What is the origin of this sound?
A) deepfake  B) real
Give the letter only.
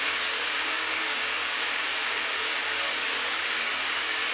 A